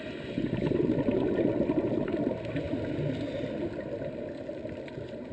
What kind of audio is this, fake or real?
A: real